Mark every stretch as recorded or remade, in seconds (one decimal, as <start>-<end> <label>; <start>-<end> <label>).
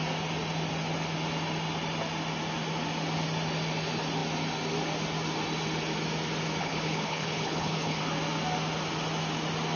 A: 0.0-6.6 recorded; 6.6-8.0 remade; 8.0-9.8 recorded